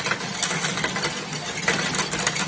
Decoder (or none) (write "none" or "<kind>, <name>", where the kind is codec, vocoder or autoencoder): none